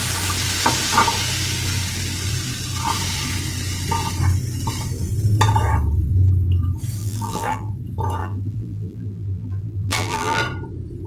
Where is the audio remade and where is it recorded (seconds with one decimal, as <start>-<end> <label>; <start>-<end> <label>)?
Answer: 0.0-7.0 recorded; 7.0-7.7 remade; 7.7-8.2 recorded; 8.2-10.4 remade; 10.4-11.1 recorded